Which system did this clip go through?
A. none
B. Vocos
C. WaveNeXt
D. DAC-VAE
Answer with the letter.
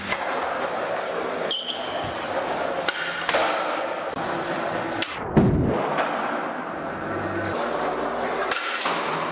A